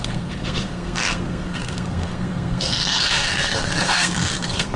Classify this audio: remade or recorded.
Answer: remade